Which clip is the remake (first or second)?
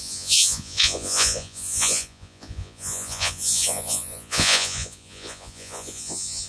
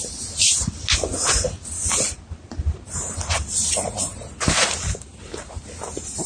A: first